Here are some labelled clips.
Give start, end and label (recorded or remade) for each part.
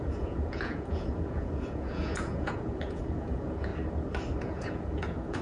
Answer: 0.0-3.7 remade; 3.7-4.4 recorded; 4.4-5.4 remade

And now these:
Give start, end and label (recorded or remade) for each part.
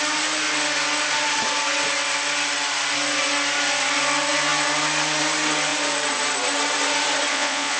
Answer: 0.0-7.3 recorded; 7.3-7.8 remade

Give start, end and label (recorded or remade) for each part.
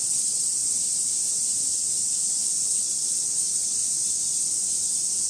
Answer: 0.0-0.6 remade; 0.6-2.7 recorded; 2.7-3.8 remade; 3.8-5.3 recorded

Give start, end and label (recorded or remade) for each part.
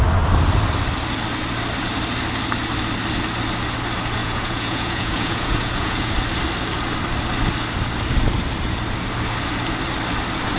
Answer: 0.0-4.2 recorded; 4.2-6.1 remade; 6.1-10.6 recorded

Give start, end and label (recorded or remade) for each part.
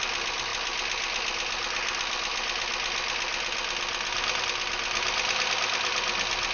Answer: 0.0-6.5 recorded